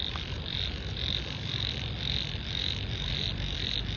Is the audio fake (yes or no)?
no